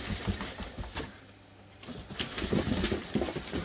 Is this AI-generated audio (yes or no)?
no